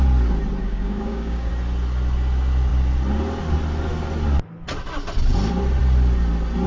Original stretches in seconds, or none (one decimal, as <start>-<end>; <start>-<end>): 0.0-0.6; 1.5-6.7